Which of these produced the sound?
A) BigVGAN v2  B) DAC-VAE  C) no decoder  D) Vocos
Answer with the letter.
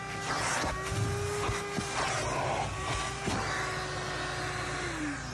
C